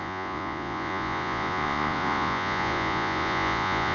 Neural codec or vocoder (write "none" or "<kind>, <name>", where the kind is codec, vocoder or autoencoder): vocoder, Vocos